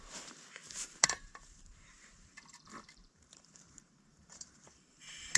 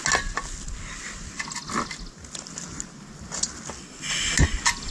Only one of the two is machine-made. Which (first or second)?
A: first